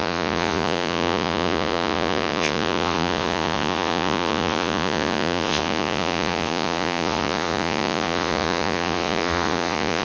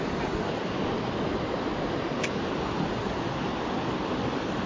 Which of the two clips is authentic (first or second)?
second